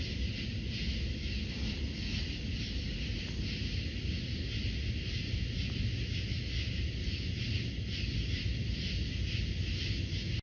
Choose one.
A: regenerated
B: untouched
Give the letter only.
B